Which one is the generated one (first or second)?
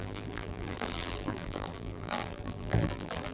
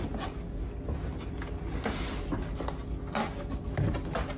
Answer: first